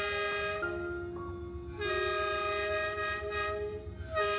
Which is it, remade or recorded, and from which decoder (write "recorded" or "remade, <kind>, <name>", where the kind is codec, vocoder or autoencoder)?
recorded